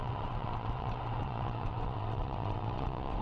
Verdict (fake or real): fake